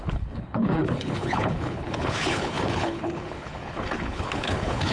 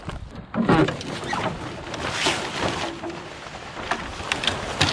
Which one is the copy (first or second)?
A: first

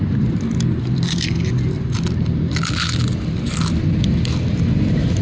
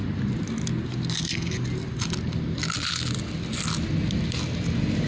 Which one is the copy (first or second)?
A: first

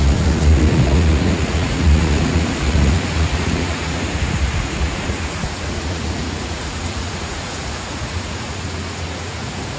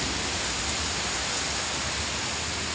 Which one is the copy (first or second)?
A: first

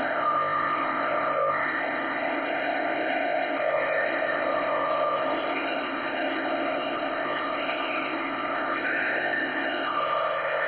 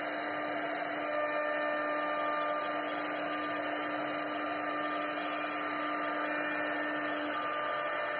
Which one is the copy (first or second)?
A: first